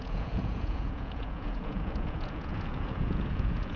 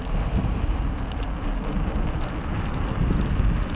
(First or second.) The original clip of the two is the second